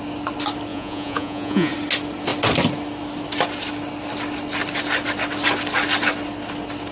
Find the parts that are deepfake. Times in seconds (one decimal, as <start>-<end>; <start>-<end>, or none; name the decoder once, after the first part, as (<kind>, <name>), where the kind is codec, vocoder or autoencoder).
0.7-1.7 (vocoder, Vocos)